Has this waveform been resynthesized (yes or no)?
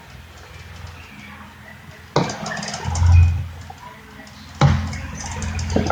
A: no